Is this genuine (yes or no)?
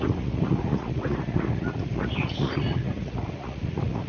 no